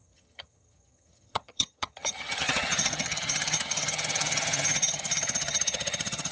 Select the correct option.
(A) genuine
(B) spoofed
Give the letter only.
B